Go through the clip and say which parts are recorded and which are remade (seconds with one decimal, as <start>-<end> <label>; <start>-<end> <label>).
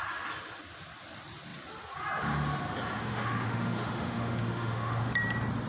0.0-3.0 recorded; 3.0-5.1 remade; 5.1-5.7 recorded